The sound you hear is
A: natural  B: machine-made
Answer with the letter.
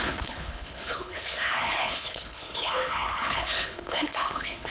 B